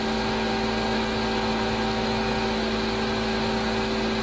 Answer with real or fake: real